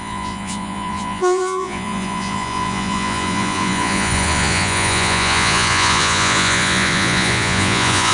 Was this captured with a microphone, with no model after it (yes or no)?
no